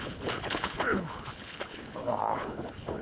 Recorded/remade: remade